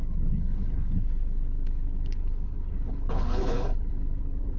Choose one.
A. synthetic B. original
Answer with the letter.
A